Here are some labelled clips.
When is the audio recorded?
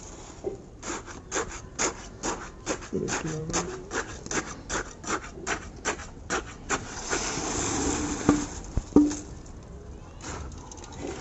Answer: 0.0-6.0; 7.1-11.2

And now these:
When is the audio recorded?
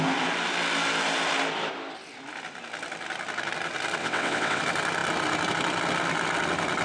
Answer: 0.0-4.0; 4.6-6.8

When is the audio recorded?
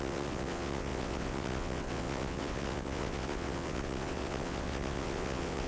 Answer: none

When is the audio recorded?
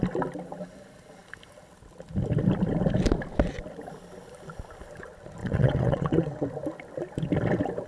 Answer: 0.0-5.4; 6.5-7.9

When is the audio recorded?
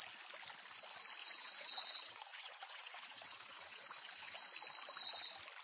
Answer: 0.0-1.2; 4.5-5.6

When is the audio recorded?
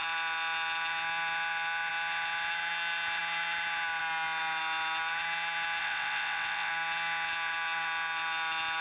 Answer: 0.0-5.8; 6.7-8.8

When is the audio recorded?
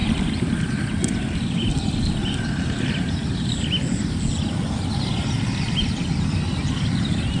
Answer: 0.0-7.4